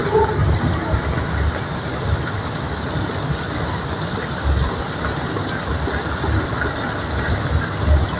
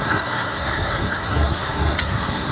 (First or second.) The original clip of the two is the first